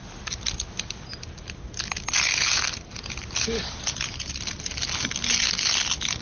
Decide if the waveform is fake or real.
real